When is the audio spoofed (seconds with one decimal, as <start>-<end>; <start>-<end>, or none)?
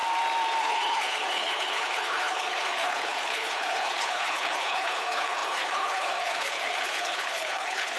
0.6-8.0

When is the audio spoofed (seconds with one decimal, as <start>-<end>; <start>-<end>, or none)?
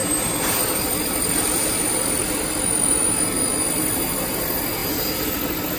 0.0-3.0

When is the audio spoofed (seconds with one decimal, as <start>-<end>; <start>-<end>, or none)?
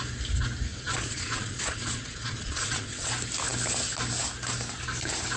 0.7-3.1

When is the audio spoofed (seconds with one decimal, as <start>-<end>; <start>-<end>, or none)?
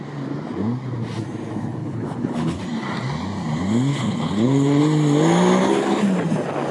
1.8-2.6; 3.9-4.8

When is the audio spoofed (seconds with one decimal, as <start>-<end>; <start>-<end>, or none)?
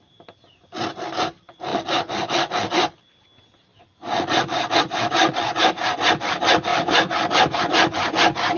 none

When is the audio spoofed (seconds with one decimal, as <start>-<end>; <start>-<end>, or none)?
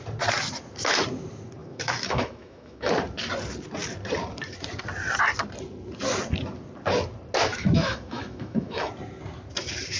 1.6-2.9; 7.5-8.9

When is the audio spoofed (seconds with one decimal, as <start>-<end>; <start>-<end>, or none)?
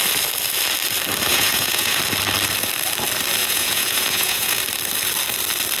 1.3-2.0; 3.4-4.6